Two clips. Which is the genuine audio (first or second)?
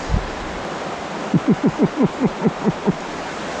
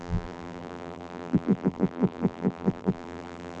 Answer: first